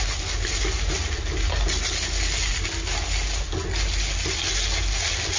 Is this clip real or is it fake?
real